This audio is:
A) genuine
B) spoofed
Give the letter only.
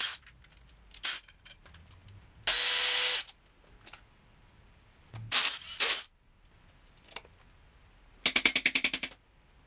A